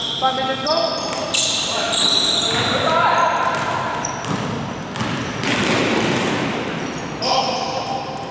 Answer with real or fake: real